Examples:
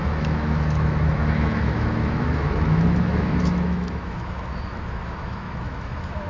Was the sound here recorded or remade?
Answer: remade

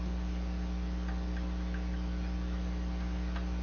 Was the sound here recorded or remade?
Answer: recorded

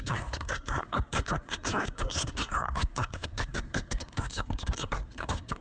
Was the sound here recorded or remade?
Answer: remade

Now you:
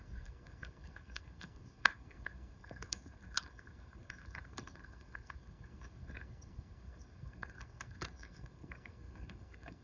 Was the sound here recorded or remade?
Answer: remade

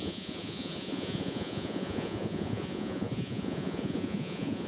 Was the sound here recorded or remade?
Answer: remade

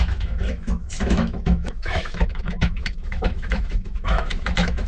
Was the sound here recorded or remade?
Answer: remade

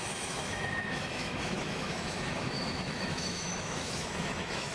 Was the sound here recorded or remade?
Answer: remade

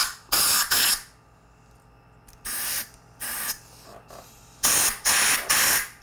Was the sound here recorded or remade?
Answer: recorded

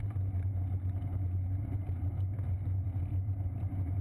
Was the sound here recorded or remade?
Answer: recorded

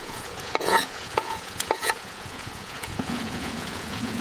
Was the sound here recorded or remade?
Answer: remade